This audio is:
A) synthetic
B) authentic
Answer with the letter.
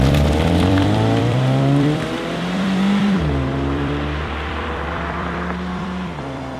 A